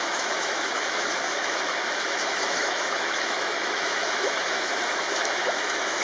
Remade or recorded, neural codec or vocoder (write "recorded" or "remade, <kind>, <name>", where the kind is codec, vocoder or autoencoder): remade, autoencoder, DAC-VAE